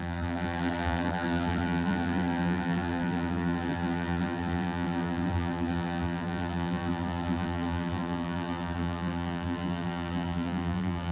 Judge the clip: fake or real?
fake